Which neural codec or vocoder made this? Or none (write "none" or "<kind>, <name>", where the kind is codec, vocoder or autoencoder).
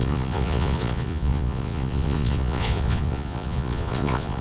vocoder, Vocos